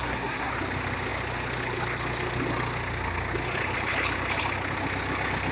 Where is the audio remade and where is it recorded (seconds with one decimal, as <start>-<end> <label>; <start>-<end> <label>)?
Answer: 0.0-0.5 remade; 0.5-5.5 recorded